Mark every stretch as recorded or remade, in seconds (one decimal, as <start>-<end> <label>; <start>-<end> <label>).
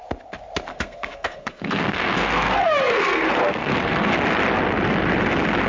0.0-0.7 recorded; 0.7-4.1 remade; 4.1-5.7 recorded